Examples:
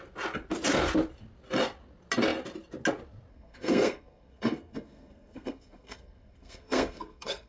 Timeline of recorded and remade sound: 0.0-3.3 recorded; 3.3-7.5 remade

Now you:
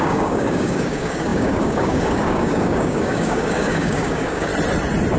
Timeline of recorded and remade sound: 0.0-4.5 remade; 4.5-5.2 recorded

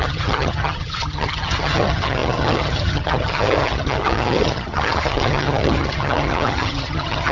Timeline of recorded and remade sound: 0.0-7.3 remade

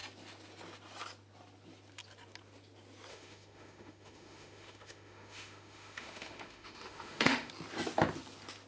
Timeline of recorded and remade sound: 0.0-3.1 recorded; 3.1-7.5 remade; 7.5-8.7 recorded

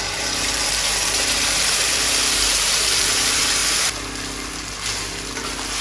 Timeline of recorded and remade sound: 0.0-3.6 remade; 3.6-5.8 recorded